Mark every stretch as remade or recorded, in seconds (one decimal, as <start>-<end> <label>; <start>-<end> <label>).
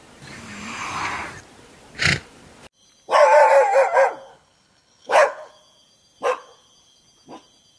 0.0-4.3 recorded; 4.3-5.5 remade; 5.5-7.8 recorded